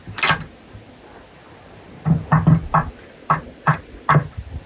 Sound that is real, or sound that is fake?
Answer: real